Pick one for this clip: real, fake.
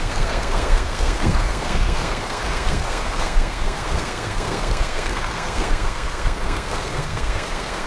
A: fake